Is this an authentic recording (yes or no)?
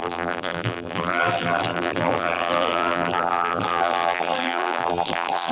no